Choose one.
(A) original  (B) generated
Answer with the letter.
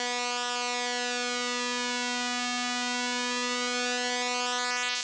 A